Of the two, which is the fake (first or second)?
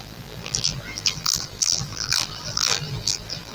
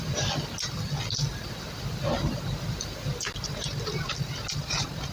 first